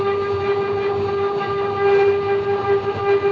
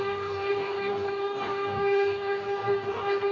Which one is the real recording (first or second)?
first